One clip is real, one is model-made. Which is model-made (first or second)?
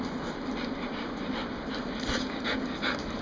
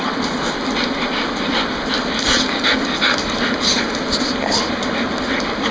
second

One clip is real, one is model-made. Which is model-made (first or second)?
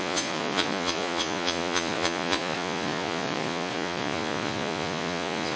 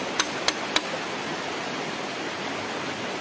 first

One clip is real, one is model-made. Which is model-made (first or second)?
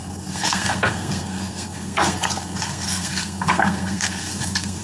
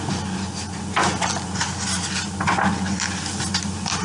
first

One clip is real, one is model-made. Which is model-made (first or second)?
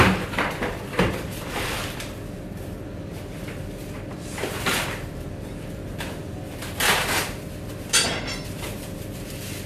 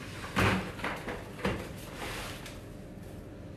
first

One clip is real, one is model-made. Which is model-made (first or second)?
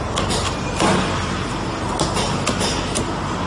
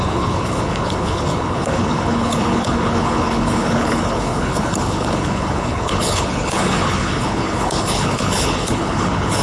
second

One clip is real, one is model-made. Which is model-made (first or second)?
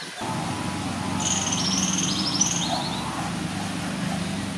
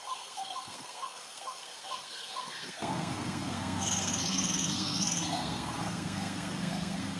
second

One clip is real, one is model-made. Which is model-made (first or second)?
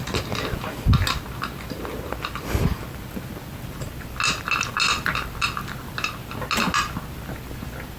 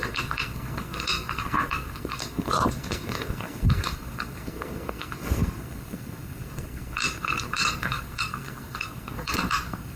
second